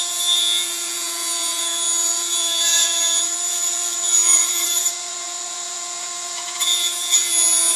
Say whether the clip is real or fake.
fake